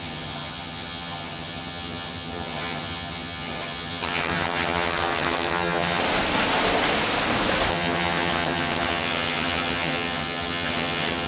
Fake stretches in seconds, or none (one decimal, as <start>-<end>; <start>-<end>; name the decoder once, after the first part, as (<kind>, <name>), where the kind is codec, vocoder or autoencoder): 0.0-6.0 (vocoder, HiFi-GAN); 7.7-11.3